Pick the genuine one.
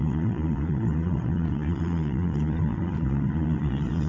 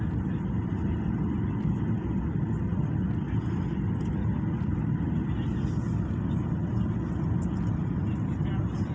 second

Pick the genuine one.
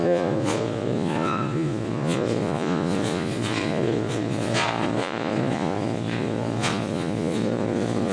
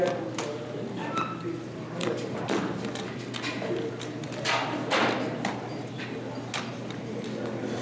second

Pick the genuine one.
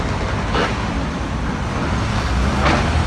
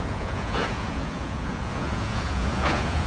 first